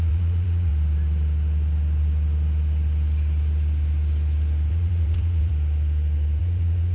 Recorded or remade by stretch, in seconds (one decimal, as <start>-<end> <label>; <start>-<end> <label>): 0.0-0.7 remade; 0.7-4.7 recorded; 4.7-5.5 remade; 5.5-6.4 recorded; 6.4-6.9 remade